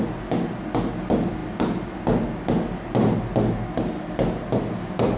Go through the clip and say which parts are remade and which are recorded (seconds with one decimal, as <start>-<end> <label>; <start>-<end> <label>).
0.0-5.2 recorded